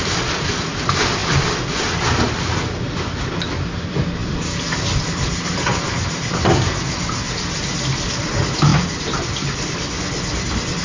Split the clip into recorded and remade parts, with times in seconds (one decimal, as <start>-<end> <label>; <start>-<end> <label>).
0.0-4.2 recorded; 4.2-5.9 remade; 5.9-10.8 recorded